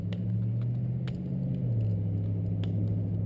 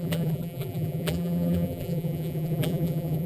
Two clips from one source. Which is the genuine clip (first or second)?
first